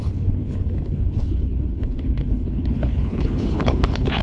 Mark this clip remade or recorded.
remade